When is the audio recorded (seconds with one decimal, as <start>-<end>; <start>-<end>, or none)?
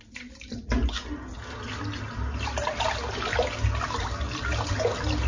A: 0.0-5.3